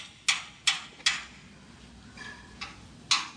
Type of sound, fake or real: real